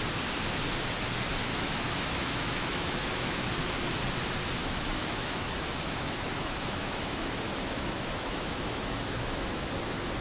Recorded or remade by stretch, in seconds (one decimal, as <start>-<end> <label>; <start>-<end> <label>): 0.0-1.4 recorded; 1.4-3.5 remade; 3.5-4.6 recorded; 4.6-9.7 remade; 9.7-10.2 recorded